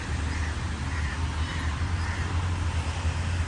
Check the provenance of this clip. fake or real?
real